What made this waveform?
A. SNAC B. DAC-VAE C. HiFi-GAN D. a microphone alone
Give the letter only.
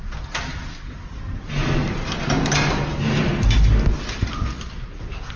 D